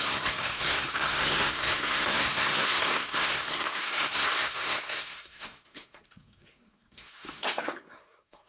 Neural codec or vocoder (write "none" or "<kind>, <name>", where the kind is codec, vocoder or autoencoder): codec, SNAC